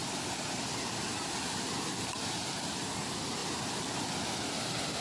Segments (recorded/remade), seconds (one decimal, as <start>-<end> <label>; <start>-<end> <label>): 0.0-5.0 recorded